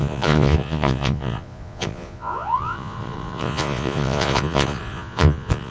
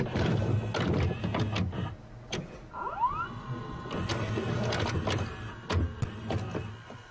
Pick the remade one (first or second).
first